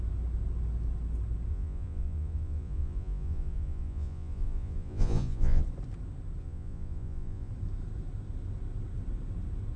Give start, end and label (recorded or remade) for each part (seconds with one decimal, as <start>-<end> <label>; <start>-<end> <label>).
0.0-1.5 recorded; 1.5-5.6 remade; 5.6-6.4 recorded; 6.4-7.5 remade; 7.5-9.8 recorded